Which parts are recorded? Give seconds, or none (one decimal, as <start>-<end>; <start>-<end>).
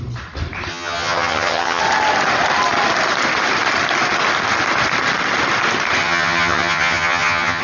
0.0-0.7; 1.8-6.0